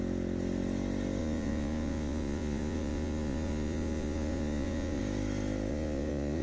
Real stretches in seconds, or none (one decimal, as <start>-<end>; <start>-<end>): 0.0-1.2; 5.0-5.7